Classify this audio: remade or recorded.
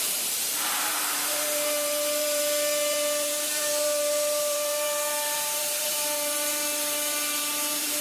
remade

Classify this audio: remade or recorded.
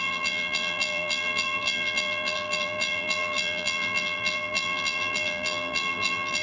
remade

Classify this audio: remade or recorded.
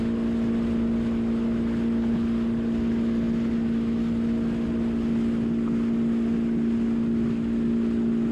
recorded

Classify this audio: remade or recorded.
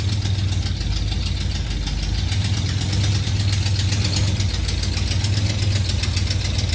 recorded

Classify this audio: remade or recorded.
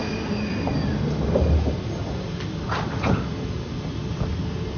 recorded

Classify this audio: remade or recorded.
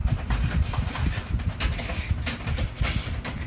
recorded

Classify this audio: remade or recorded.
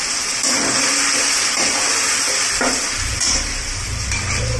remade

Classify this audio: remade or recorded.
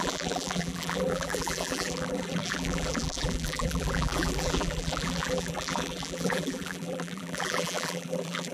remade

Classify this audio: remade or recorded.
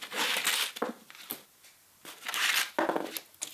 recorded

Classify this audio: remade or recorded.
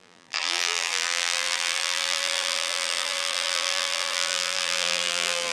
remade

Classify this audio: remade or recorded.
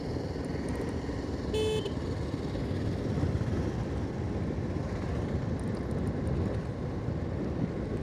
recorded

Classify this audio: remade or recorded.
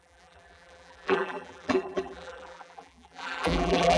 remade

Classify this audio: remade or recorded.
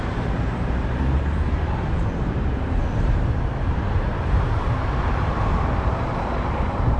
remade